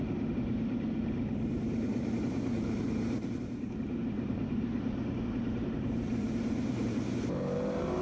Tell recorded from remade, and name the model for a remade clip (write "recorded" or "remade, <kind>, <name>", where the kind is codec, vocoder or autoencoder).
remade, vocoder, BigVGAN v2